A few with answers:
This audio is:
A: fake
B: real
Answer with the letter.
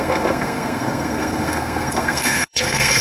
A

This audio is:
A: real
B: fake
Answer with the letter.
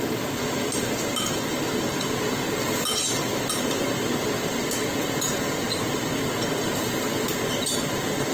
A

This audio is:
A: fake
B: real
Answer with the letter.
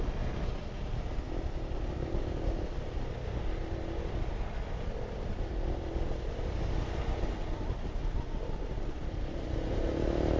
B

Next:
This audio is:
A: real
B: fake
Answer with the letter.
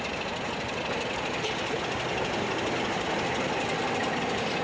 A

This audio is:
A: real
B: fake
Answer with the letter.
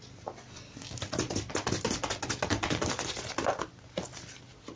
A